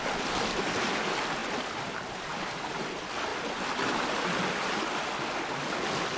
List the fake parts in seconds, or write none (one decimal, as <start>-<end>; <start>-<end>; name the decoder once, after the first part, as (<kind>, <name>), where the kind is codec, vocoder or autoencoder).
1.4-1.9 (vocoder, BigVGAN v2); 2.3-2.9